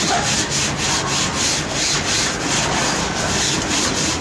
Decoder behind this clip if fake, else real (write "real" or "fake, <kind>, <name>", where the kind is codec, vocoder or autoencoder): real